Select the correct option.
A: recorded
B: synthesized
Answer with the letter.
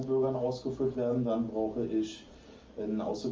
A